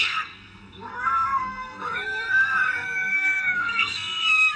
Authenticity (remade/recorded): remade